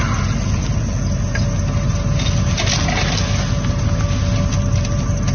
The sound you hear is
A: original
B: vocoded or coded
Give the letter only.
A